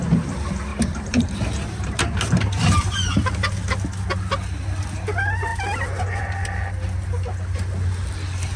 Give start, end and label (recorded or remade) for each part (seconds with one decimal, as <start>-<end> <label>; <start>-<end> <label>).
0.0-0.7 recorded; 0.7-3.3 remade; 3.3-8.6 recorded